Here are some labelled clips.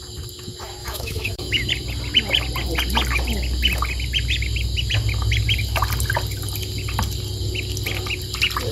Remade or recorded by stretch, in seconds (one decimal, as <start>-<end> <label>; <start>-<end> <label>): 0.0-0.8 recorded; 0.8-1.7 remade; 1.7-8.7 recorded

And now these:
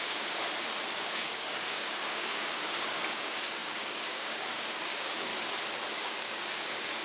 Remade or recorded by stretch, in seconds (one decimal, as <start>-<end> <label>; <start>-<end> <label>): 0.0-0.4 remade; 0.4-1.0 recorded; 1.0-5.3 remade; 5.3-6.0 recorded; 6.0-7.0 remade

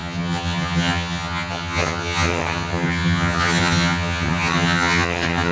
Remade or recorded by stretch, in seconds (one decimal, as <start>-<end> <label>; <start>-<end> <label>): 0.0-5.5 remade

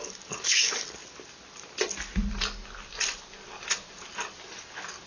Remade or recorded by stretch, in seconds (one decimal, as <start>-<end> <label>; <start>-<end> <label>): 0.0-5.1 recorded

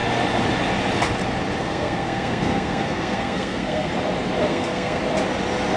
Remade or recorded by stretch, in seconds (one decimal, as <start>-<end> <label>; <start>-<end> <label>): 0.0-1.6 recorded; 1.6-3.9 remade; 3.9-4.4 recorded; 4.4-5.0 remade; 5.0-5.8 recorded

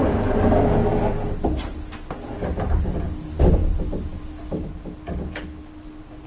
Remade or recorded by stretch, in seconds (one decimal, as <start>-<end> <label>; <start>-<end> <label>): 0.0-6.3 recorded